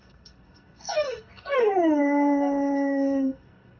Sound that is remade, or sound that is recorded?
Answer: remade